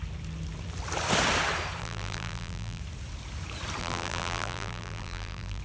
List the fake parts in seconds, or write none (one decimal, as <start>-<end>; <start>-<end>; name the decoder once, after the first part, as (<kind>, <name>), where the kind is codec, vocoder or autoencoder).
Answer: 1.8-2.8 (vocoder, BigVGAN v2); 3.8-5.6